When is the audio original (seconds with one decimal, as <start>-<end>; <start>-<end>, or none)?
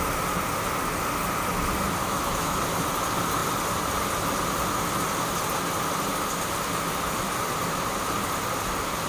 0.0-2.0; 2.6-9.1